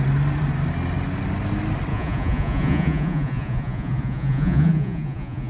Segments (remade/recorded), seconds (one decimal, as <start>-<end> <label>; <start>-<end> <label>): 0.0-1.9 recorded; 1.9-5.5 remade